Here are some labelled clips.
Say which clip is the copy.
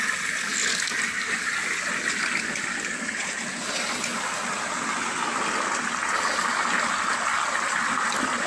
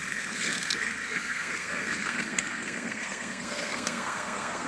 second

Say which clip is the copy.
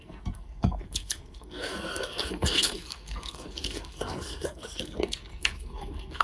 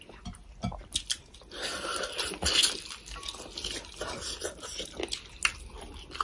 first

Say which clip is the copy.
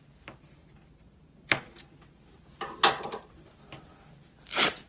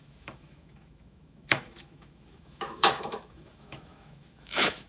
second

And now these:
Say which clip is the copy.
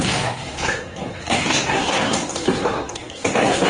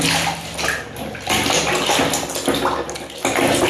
first